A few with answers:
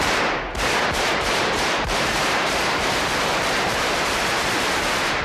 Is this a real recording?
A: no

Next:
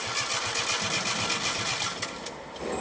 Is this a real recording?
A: yes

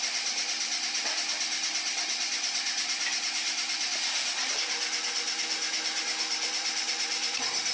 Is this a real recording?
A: yes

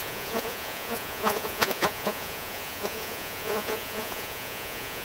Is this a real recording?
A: no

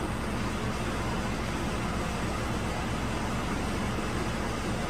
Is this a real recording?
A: yes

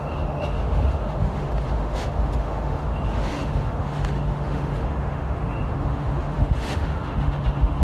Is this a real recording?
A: no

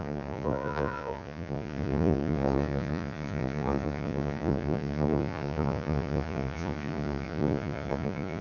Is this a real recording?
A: no